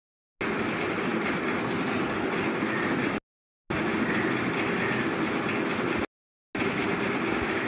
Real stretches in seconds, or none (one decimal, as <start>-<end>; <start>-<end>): 0.0-7.7